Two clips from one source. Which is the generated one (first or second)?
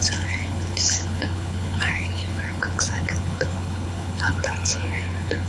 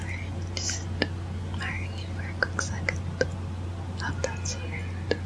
first